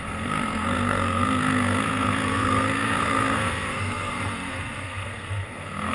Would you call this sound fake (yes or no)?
yes